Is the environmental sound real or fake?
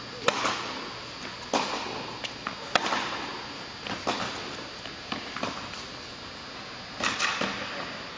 real